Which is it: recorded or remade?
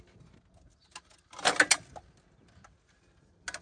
recorded